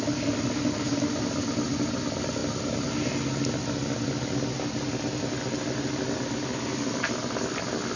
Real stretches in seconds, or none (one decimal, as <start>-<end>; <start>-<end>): 0.0-8.0